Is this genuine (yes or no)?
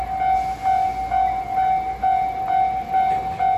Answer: yes